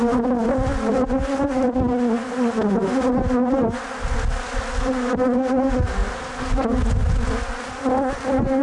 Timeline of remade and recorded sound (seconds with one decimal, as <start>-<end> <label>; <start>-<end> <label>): 0.0-8.6 recorded